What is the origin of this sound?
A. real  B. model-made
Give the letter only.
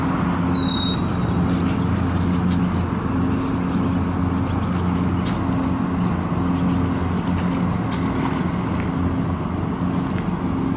A